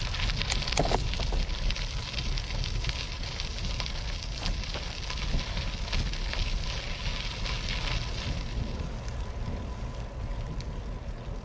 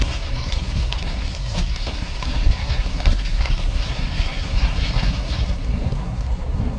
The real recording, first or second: first